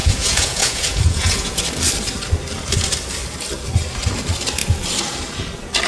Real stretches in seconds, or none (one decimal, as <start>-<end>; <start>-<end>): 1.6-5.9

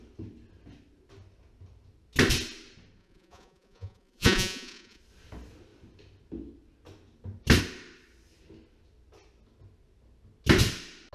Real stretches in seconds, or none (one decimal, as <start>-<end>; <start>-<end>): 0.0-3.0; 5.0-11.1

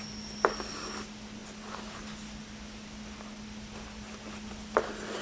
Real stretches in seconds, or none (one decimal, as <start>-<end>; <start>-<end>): 0.0-5.2

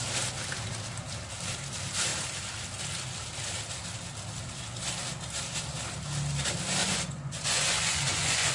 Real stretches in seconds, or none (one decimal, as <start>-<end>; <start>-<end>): 0.0-6.8